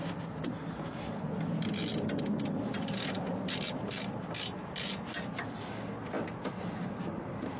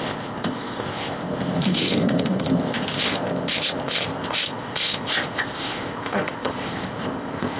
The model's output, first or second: second